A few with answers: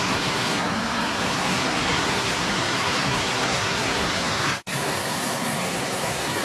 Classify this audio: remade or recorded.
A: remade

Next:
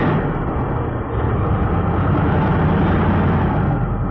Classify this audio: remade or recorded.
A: recorded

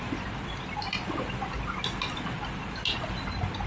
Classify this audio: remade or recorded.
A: recorded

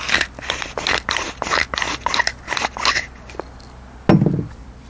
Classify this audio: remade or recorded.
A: recorded